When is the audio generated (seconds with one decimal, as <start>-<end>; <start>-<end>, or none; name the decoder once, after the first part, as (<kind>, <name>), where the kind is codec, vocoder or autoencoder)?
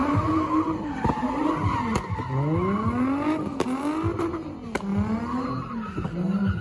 0.0-1.5 (vocoder, BigVGAN v2)